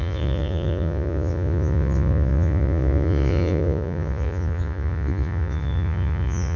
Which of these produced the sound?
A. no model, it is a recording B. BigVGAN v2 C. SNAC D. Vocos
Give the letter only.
D